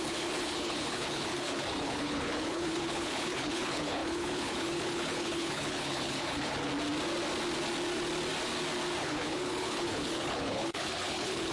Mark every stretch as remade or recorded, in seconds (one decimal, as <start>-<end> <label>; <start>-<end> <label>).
0.0-6.7 remade; 6.7-9.0 recorded; 9.0-11.5 remade